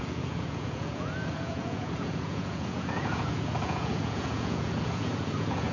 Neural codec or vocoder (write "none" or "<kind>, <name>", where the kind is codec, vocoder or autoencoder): vocoder, Vocos